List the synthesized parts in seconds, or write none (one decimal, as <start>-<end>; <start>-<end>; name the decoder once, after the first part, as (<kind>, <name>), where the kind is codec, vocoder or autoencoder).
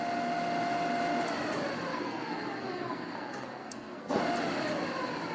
1.9-4.2 (codec, SNAC)